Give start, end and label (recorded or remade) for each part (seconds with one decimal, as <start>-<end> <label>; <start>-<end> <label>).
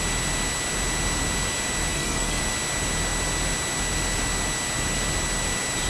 0.0-1.9 recorded; 1.9-2.4 remade; 2.4-5.9 recorded